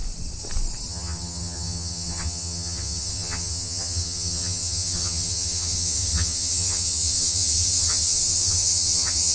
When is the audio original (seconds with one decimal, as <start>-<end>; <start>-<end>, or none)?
0.0-0.9